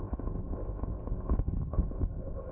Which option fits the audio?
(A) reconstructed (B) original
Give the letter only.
A